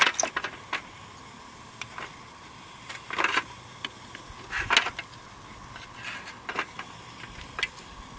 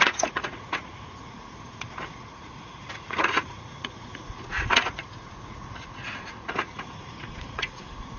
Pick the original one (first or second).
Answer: first